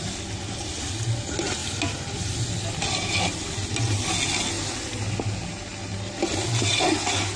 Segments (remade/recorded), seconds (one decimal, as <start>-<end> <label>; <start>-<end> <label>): 0.0-7.4 recorded